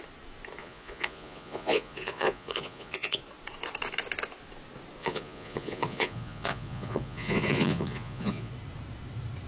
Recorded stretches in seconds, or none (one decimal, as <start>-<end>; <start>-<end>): 0.0-0.6; 3.2-5.0; 8.5-9.5